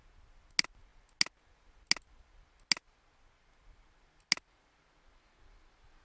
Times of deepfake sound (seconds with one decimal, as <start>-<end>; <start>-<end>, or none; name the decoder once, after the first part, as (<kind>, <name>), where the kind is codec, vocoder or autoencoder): none